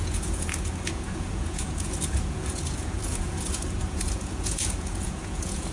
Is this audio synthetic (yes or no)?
yes